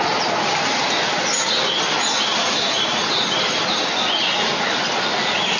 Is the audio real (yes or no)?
yes